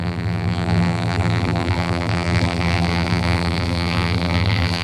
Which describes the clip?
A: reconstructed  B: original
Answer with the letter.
A